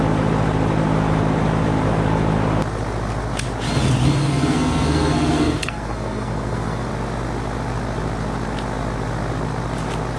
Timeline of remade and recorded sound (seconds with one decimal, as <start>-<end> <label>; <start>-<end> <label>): 0.0-4.2 recorded; 4.2-6.9 remade; 6.9-10.2 recorded